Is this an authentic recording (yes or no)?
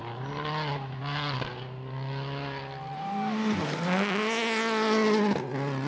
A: yes